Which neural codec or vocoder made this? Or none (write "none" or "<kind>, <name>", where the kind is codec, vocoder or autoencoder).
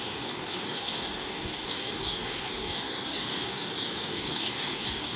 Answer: codec, DAC